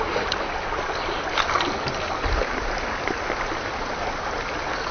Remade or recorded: recorded